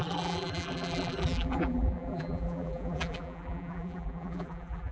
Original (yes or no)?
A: no